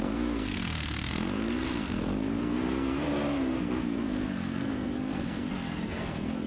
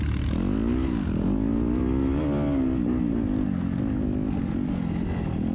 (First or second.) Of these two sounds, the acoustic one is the second